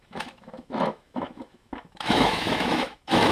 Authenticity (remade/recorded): remade